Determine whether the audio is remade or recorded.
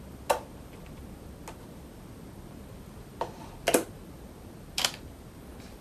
recorded